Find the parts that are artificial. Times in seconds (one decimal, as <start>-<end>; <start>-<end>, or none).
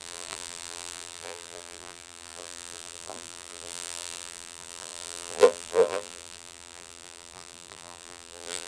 0.0-8.7